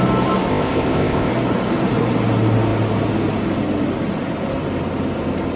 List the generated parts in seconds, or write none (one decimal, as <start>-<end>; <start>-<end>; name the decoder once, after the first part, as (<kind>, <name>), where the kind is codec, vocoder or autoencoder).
0.5-1.3 (codec, ZipCodec)